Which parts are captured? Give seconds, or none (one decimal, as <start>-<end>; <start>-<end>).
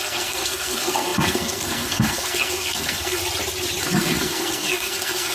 3.2-3.8